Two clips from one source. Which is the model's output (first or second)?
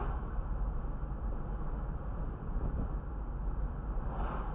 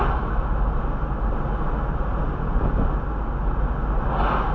first